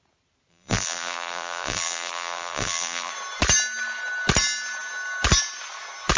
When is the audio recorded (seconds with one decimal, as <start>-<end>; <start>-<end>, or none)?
0.0-0.5; 3.1-6.2